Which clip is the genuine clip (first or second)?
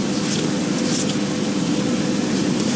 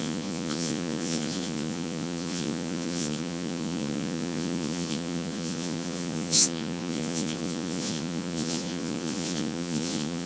first